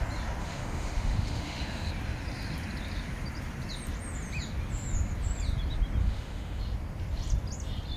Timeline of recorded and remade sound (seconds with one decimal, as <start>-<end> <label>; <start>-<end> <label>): 0.0-0.4 recorded; 0.4-1.9 remade; 1.9-6.0 recorded; 6.0-6.6 remade; 6.6-8.0 recorded